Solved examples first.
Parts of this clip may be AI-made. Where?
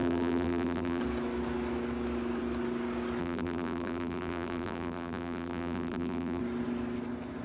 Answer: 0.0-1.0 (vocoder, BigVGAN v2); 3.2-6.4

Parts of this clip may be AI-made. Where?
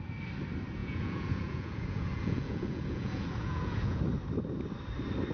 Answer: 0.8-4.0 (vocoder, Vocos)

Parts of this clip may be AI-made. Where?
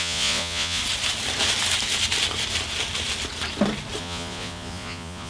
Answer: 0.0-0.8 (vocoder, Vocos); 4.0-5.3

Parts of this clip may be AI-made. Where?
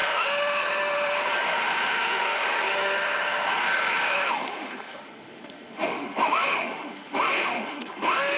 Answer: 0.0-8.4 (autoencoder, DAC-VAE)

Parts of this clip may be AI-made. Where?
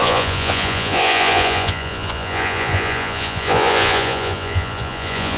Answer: 0.0-5.4 (vocoder, Vocos)